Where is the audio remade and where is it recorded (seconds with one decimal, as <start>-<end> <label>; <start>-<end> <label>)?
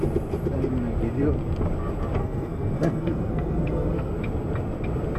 0.0-2.2 recorded; 2.2-4.1 remade; 4.1-5.2 recorded